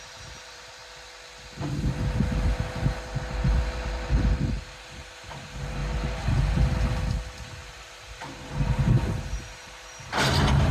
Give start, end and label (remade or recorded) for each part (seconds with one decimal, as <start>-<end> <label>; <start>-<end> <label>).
0.0-0.8 remade; 0.8-4.5 recorded; 4.5-5.8 remade; 5.8-7.7 recorded; 7.7-10.7 remade